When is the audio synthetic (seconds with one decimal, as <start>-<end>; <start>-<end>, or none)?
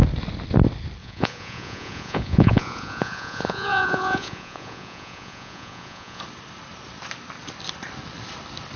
1.0-6.2